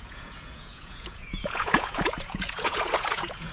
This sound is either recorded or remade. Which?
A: remade